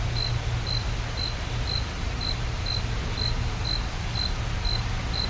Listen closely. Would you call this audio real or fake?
real